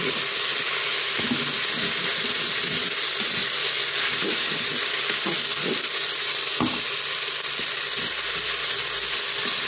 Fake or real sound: real